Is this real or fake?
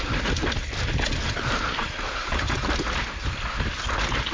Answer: real